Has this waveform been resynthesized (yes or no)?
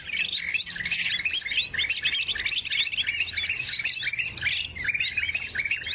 no